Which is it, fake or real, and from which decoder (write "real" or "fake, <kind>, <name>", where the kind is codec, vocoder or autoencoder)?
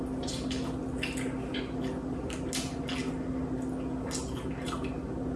real